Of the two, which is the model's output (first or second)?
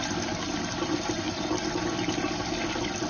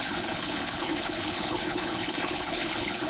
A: second